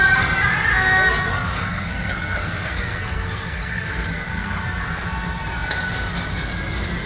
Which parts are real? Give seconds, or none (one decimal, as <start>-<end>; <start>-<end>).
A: 0.0-1.3; 4.6-7.1